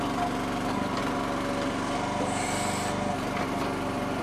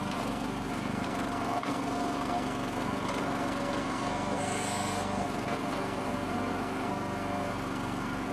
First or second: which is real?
first